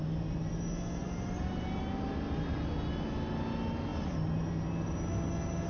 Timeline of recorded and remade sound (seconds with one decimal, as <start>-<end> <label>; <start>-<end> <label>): 0.0-0.5 remade; 0.5-1.0 recorded; 1.0-1.8 remade; 1.8-5.7 recorded